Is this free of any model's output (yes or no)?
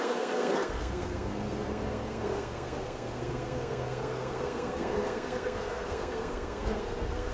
no